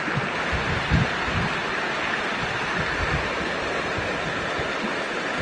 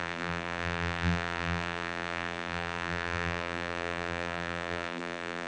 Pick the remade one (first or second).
second